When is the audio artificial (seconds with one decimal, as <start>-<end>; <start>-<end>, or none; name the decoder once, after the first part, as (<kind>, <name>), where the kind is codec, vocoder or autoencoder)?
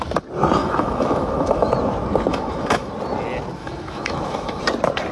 0.6-1.7 (autoencoder, DAC-VAE); 2.3-2.9; 3.6-4.6